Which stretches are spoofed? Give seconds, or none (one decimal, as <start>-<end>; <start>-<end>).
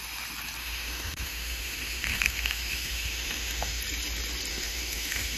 0.6-3.8; 4.5-5.4